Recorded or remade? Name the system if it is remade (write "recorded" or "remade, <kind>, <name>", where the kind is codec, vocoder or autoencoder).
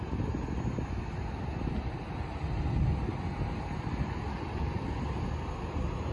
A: recorded